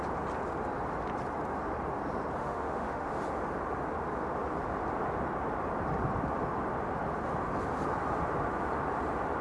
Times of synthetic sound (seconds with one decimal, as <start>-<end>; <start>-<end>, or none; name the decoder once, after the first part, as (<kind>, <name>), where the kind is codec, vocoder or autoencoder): 2.4-3.1 (autoencoder, DAC-VAE)